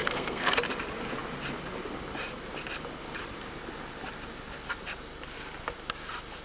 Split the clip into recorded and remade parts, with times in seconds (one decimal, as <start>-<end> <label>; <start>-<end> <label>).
0.0-0.5 remade; 0.5-6.4 recorded